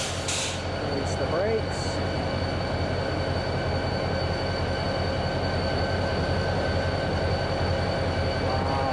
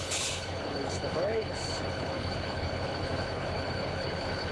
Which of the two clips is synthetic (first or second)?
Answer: second